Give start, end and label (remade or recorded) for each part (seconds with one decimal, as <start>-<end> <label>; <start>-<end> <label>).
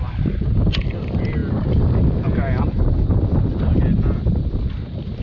0.0-5.2 recorded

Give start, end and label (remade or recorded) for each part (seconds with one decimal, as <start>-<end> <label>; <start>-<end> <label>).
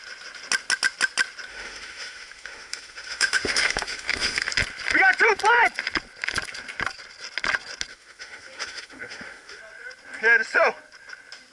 0.0-1.5 recorded; 1.5-4.5 remade; 4.5-7.9 recorded; 7.9-9.6 remade; 9.6-11.5 recorded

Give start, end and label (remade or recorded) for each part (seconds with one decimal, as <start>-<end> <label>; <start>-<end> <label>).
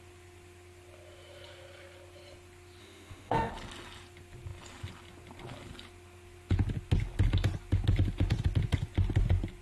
0.0-2.8 recorded; 2.8-3.5 remade; 3.5-9.6 recorded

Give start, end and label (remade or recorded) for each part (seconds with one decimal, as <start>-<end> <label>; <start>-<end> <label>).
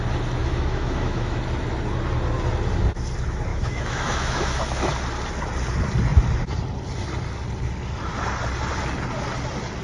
0.0-0.4 recorded; 0.4-1.4 remade; 1.4-3.5 recorded; 3.5-4.8 remade; 4.8-9.8 recorded